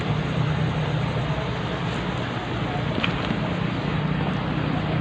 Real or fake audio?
real